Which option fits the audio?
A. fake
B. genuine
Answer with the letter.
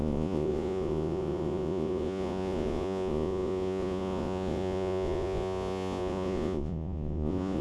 A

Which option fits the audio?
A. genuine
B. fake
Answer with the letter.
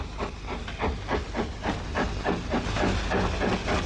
A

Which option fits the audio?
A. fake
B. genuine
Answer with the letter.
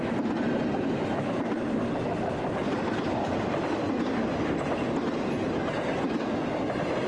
B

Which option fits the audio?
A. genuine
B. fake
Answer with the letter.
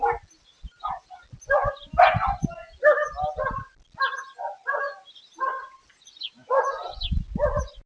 A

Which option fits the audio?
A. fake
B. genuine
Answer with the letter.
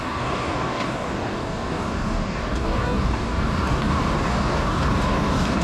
A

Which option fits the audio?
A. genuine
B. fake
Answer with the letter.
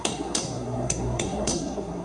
B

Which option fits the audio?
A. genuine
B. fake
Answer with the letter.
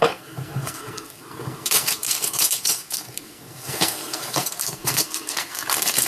B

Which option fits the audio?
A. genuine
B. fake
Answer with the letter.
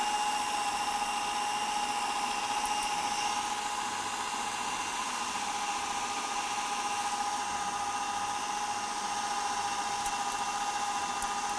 A